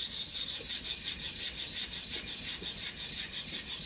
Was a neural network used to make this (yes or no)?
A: no